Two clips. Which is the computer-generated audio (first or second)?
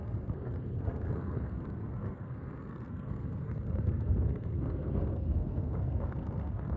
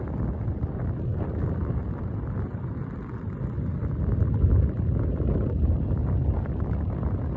first